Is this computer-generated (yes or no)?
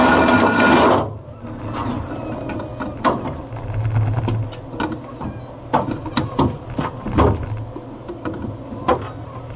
no